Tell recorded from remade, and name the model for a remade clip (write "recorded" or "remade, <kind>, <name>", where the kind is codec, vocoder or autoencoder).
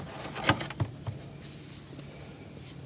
recorded